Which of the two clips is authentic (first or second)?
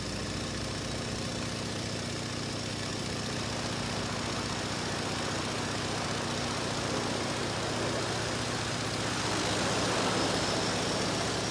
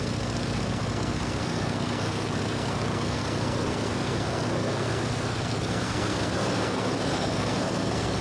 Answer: first